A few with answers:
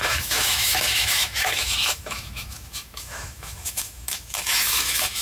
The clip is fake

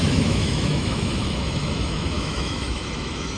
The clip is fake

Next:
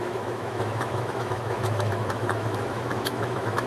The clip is fake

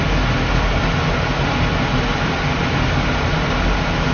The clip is real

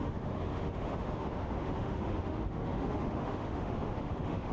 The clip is fake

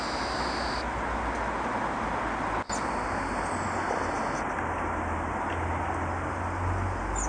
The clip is real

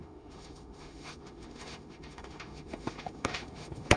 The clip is fake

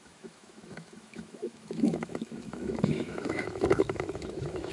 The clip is fake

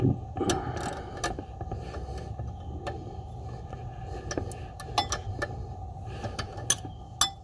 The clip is real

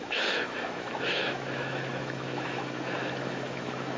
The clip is fake